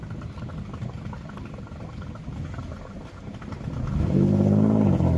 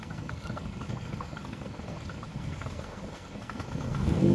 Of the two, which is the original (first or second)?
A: first